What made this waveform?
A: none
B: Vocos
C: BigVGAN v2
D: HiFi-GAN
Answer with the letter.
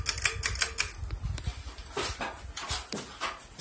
A